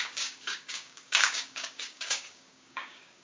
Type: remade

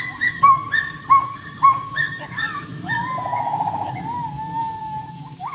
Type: remade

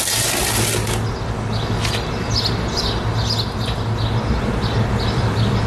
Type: recorded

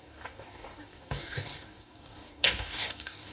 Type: remade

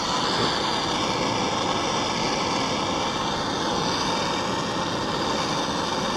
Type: recorded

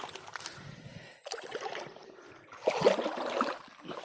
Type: recorded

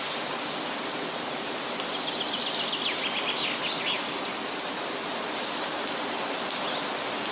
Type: recorded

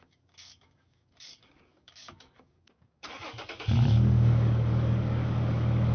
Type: remade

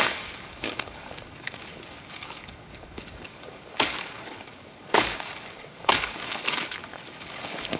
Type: remade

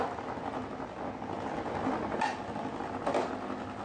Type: recorded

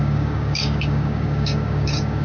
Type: remade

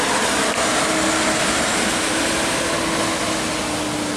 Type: recorded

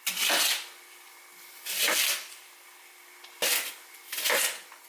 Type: recorded